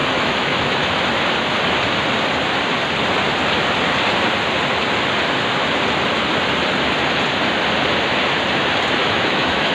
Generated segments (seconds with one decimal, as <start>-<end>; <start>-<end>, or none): 0.0-0.9; 9.0-9.7